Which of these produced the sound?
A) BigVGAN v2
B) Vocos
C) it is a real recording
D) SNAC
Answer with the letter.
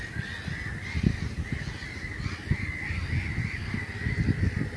C